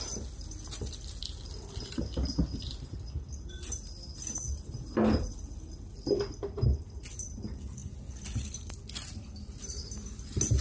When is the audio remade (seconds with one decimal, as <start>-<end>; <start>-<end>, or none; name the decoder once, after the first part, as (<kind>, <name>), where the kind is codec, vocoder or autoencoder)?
none